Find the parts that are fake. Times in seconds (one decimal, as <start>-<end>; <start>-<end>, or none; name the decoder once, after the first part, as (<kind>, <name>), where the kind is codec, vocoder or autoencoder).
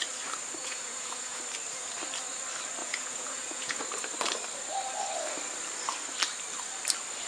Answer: 0.6-1.4 (vocoder, Vocos); 2.8-3.8